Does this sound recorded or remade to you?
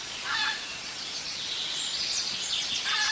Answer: remade